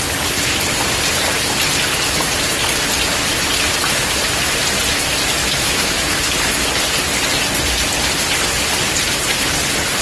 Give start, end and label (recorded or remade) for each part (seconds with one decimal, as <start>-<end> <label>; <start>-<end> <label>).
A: 0.0-5.4 recorded; 5.4-6.2 remade; 6.2-10.0 recorded